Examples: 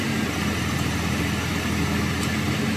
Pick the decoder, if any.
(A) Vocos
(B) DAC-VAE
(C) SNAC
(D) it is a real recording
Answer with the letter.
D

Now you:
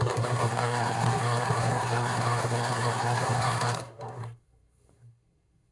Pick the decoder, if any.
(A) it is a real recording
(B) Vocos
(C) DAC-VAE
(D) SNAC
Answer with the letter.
D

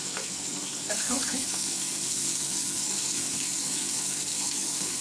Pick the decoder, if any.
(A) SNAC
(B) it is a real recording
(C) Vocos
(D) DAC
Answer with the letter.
A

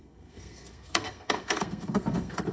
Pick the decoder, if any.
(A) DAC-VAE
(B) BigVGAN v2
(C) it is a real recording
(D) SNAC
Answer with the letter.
D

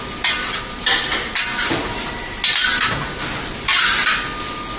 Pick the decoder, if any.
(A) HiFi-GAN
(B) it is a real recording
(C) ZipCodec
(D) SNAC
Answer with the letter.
B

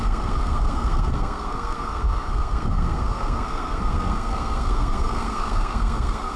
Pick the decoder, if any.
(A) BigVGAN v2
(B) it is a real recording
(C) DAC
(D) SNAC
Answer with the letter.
D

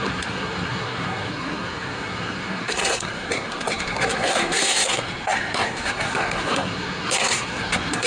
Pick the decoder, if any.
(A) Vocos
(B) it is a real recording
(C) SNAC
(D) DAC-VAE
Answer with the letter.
C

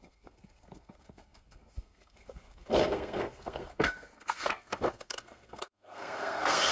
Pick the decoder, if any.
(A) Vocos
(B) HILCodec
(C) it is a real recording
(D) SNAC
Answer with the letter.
D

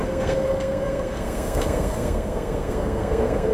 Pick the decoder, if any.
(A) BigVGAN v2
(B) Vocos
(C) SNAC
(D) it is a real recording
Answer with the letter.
C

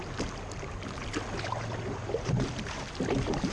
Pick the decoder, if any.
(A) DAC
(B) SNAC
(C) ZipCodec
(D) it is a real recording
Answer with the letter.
D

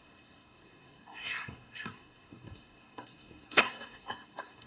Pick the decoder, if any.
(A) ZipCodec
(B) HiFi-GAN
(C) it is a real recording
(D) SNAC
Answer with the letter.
D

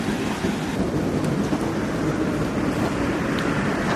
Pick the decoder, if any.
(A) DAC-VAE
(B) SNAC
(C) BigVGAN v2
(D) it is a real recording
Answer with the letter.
D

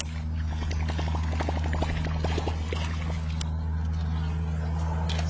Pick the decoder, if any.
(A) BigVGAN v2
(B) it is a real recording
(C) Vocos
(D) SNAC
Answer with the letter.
B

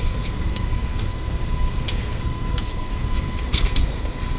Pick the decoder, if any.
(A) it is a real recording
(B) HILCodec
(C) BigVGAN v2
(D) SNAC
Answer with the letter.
D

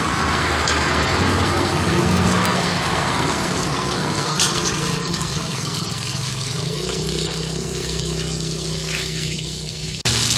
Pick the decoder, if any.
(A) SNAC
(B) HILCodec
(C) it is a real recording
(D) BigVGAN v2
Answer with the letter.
A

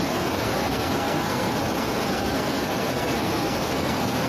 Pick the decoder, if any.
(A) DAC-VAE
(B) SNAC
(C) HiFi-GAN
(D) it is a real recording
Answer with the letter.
B